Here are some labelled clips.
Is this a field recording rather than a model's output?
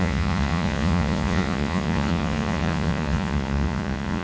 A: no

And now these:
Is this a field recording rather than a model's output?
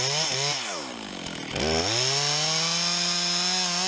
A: yes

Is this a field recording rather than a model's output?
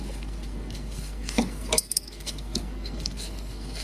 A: no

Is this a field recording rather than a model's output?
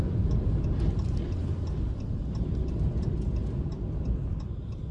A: yes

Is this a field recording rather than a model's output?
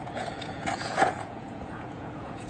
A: no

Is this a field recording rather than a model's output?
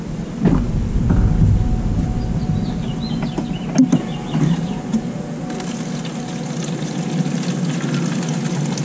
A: yes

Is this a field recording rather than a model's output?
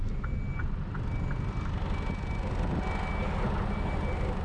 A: yes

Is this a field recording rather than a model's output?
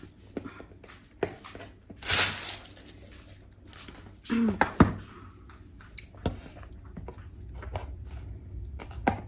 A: yes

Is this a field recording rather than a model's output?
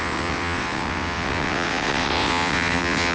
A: no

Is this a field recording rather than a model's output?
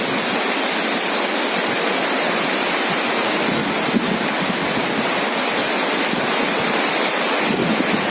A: yes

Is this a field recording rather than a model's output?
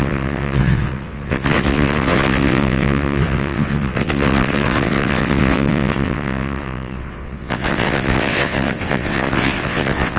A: no